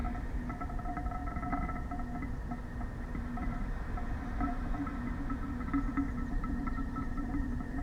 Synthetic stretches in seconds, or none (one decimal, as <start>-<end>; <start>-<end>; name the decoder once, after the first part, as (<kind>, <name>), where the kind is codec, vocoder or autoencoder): 0.6-1.2 (vocoder, BigVGAN v2); 3.2-4.9; 6.3-7.8